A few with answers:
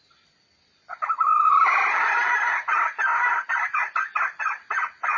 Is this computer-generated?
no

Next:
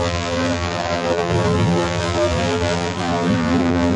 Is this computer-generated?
yes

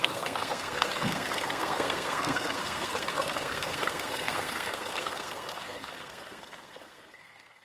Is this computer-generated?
yes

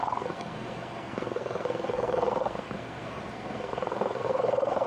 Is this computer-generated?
yes